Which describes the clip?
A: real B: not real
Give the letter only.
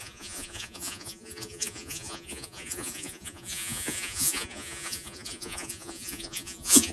B